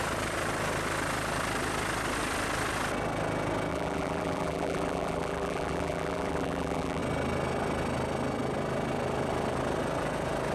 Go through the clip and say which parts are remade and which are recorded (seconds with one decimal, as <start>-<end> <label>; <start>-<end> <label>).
0.0-3.7 recorded; 3.7-7.0 remade; 7.0-10.5 recorded